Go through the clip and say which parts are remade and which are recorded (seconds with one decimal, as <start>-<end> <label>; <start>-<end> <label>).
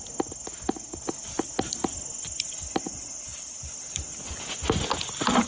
0.0-3.3 recorded; 3.3-4.3 remade; 4.3-5.5 recorded